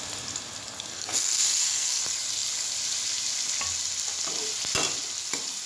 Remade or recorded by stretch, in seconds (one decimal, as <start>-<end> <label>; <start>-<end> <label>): 0.0-0.9 recorded; 0.9-2.0 remade; 2.0-5.7 recorded